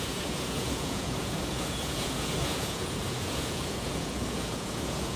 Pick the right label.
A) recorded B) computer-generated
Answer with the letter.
B